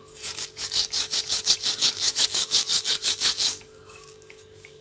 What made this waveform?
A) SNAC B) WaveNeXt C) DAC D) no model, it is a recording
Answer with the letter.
C